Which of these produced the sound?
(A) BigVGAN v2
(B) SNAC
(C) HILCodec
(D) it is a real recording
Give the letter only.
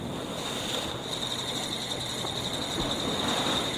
D